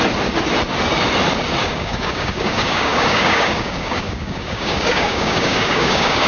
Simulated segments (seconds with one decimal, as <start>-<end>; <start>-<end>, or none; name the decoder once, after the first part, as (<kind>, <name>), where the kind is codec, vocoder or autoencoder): 1.6-6.3 (codec, DAC)